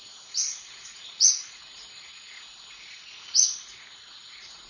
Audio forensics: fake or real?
fake